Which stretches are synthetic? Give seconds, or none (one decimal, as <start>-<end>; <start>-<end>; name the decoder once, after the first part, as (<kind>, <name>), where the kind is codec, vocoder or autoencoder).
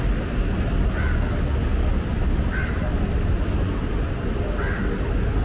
none